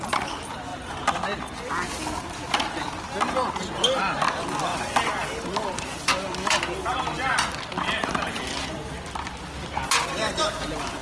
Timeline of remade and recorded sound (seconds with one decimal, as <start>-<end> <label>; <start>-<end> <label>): 0.0-11.0 recorded